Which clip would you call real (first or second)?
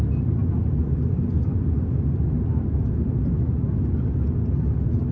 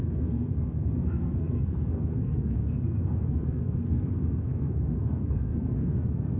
first